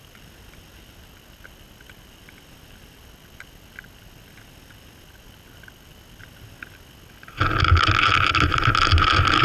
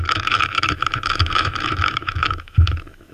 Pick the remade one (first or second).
second